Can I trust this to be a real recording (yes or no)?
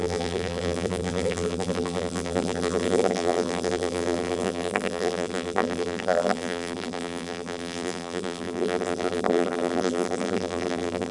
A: no